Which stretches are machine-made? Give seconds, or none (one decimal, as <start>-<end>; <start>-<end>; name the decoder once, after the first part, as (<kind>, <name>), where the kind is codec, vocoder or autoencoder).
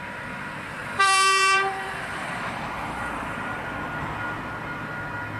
0.8-4.0 (vocoder, BigVGAN v2)